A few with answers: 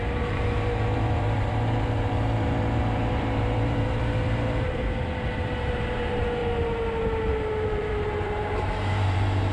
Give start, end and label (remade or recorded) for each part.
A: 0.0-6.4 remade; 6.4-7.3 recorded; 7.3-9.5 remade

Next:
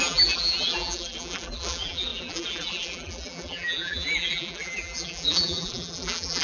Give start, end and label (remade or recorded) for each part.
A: 0.0-6.4 remade

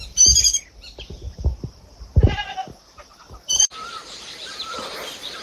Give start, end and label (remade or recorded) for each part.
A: 0.0-0.5 remade; 0.5-1.0 recorded; 1.0-5.4 remade

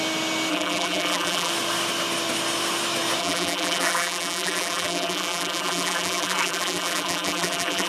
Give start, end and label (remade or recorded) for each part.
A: 0.0-0.5 recorded; 0.5-1.5 remade; 1.5-3.2 recorded; 3.2-7.9 remade

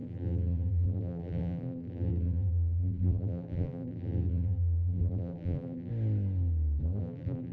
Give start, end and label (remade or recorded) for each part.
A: 0.0-5.9 remade; 5.9-7.0 recorded; 7.0-7.5 remade

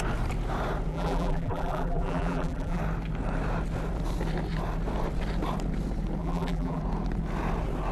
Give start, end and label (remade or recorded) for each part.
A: 0.0-0.9 recorded; 0.9-2.8 remade; 2.8-6.2 recorded; 6.2-6.8 remade; 6.8-7.9 recorded

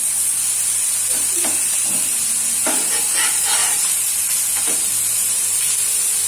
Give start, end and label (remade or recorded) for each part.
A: 0.0-3.6 recorded; 3.6-4.2 remade; 4.2-6.3 recorded